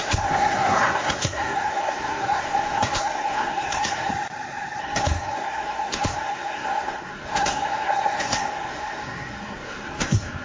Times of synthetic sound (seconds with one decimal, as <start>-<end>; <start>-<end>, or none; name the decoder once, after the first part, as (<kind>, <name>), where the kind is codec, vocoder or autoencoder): 0.0-4.1 (codec, SNAC); 4.8-10.4